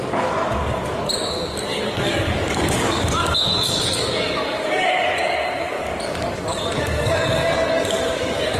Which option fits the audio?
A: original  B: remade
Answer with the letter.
B